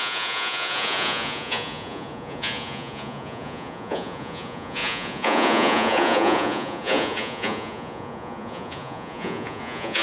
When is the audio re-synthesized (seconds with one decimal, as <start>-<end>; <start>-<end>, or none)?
0.0-10.0